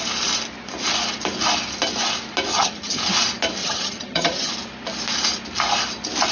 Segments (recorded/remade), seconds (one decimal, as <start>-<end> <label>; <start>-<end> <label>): 0.0-2.5 recorded; 2.5-3.0 remade; 3.0-3.6 recorded; 3.6-4.5 remade; 4.5-6.3 recorded